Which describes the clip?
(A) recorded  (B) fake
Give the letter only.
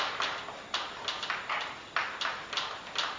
A